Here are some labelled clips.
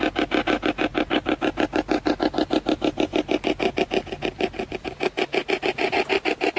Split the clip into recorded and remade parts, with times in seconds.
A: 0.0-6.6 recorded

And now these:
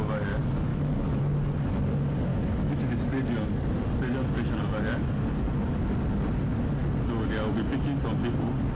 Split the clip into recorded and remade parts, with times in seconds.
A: 0.0-0.7 recorded; 0.7-1.2 remade; 1.2-2.3 recorded; 2.3-2.9 remade; 2.9-8.7 recorded